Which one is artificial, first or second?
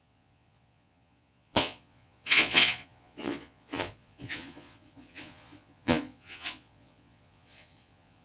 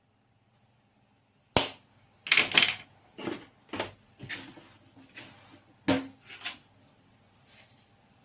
first